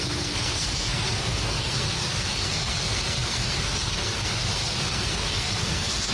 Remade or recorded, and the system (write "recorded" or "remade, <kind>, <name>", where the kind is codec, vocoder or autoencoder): remade, codec, SNAC